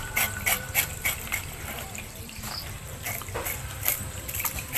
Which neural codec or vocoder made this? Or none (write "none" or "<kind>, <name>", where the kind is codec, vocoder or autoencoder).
vocoder, BigVGAN v2